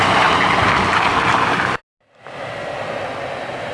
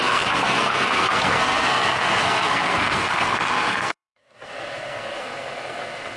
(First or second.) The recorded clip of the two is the first